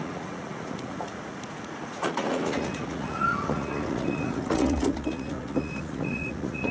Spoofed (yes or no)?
yes